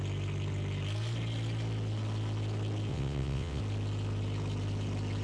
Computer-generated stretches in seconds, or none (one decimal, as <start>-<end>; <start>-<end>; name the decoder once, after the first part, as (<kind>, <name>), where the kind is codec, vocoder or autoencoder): 2.9-3.6 (vocoder, WaveNeXt)